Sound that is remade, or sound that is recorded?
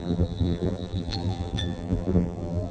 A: remade